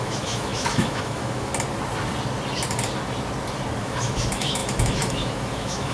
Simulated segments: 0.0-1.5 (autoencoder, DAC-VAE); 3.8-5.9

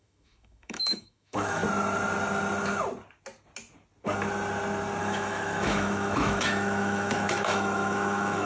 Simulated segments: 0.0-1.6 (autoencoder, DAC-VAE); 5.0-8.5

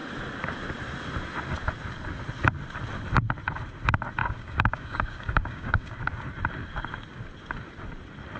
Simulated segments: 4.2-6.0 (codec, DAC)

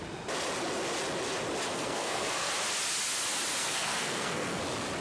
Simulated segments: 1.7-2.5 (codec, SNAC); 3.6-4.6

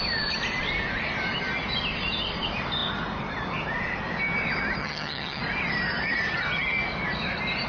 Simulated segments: 4.8-5.4 (vocoder, HiFi-GAN)

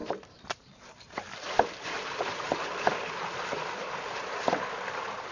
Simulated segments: 0.0-2.9 (vocoder, BigVGAN v2)